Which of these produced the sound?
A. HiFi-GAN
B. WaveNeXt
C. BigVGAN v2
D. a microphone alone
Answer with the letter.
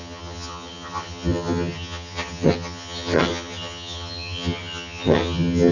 A